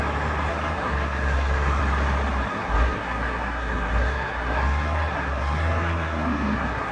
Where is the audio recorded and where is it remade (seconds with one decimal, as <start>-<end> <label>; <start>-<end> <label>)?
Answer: 0.0-0.5 recorded; 0.5-1.8 remade; 1.8-2.5 recorded; 2.5-6.9 remade